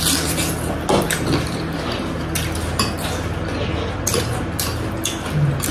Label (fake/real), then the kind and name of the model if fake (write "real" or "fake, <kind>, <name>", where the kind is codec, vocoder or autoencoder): real